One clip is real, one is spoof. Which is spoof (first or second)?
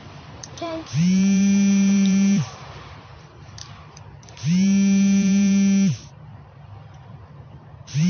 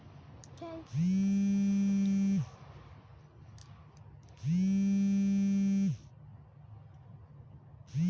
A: first